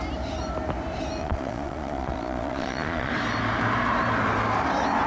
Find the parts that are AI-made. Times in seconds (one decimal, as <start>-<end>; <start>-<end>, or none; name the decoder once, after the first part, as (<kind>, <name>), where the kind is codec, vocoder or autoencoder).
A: 1.2-3.1 (vocoder, Vocos)